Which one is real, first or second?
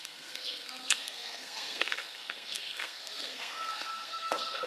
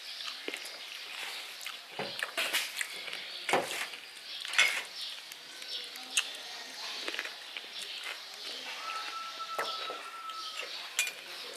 second